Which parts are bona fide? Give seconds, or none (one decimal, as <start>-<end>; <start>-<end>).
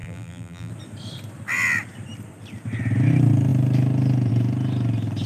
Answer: 0.7-5.3